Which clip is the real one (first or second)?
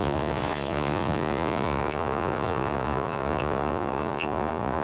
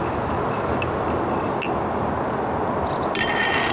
second